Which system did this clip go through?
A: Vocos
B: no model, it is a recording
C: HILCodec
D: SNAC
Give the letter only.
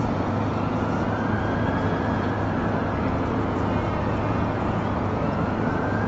A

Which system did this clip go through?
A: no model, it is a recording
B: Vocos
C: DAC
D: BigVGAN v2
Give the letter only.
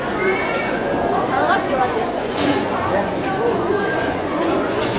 B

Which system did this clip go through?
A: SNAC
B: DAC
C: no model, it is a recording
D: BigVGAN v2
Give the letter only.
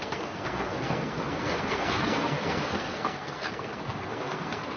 A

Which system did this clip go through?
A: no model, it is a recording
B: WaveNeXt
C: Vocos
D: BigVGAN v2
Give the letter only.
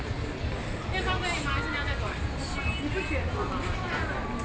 A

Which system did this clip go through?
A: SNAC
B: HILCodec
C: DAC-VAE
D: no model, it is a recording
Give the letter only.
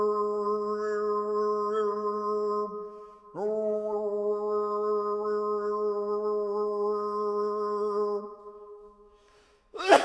C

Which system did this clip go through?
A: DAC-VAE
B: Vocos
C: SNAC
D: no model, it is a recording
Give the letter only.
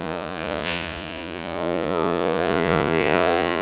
B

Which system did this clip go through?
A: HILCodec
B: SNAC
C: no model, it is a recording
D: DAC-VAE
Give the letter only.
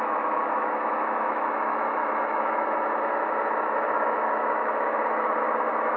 D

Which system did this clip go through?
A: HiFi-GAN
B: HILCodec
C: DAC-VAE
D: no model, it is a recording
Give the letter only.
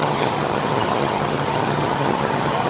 A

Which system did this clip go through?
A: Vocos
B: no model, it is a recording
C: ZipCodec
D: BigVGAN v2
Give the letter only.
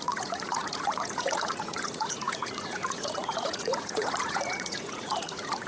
A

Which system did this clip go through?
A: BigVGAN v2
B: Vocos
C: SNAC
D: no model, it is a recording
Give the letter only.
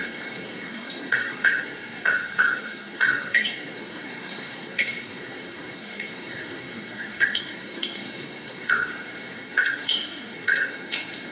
C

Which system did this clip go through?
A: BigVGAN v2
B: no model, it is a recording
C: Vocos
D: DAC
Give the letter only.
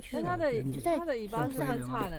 B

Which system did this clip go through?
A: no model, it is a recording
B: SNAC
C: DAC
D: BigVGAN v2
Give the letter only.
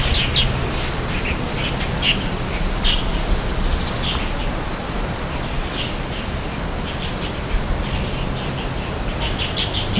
A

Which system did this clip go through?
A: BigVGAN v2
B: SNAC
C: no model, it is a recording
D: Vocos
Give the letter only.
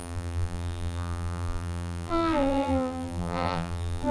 A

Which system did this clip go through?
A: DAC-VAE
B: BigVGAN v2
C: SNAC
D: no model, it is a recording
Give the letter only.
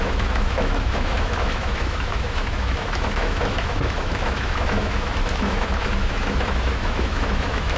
A